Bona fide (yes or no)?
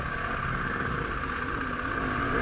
yes